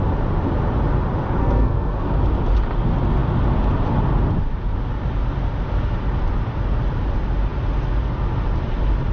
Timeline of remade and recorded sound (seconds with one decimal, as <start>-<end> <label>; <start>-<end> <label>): 0.0-1.4 recorded; 1.4-2.2 remade; 2.2-9.1 recorded